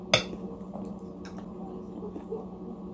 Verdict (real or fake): real